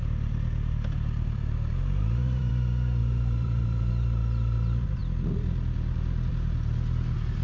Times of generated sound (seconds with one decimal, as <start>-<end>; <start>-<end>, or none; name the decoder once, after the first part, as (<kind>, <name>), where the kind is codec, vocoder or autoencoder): 0.0-2.5 (vocoder, BigVGAN v2); 3.0-3.9